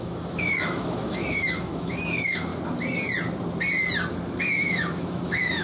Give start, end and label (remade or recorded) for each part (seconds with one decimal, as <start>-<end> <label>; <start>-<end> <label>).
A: 0.0-2.5 remade; 2.5-4.4 recorded; 4.4-5.6 remade